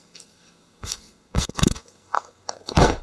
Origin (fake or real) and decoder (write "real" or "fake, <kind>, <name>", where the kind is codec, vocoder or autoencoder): fake, codec, SNAC